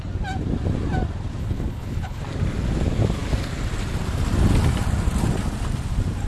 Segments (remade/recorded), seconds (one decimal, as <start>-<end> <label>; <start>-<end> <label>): 0.0-1.4 recorded; 1.4-2.2 remade; 2.2-6.3 recorded